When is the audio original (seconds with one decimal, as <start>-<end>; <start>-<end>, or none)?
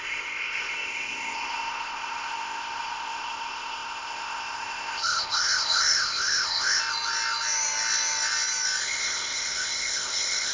6.8-8.8